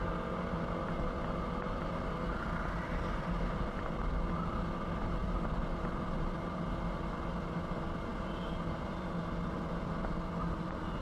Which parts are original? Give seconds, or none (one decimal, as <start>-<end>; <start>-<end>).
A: 0.0-11.0